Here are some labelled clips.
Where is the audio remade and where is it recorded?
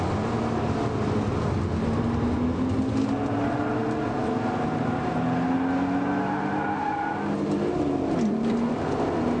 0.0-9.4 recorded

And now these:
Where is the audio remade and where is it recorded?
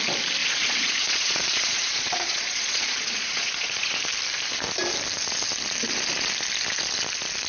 0.0-0.4 recorded; 0.4-4.0 remade; 4.0-7.5 recorded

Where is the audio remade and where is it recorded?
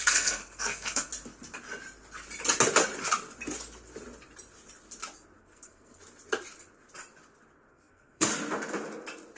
0.0-1.1 remade; 1.1-5.4 recorded; 5.4-6.0 remade; 6.0-7.7 recorded; 7.7-8.3 remade; 8.3-9.4 recorded